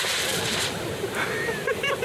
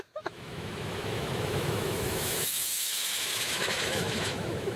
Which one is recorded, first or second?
first